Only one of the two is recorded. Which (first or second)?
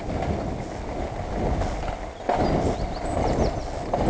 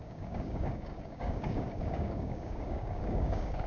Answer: first